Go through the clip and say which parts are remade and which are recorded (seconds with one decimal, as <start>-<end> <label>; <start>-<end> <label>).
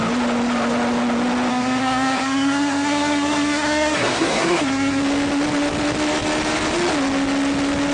0.0-1.5 recorded; 1.5-5.0 remade; 5.0-7.9 recorded